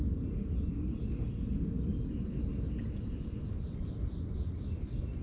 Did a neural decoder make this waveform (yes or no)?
no